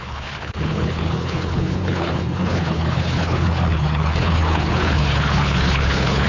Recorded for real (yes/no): no